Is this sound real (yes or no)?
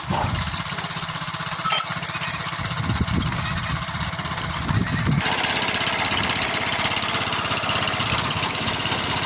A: yes